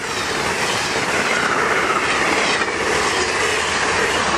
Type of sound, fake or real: fake